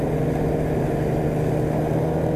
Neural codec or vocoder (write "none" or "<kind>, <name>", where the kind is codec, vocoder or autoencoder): none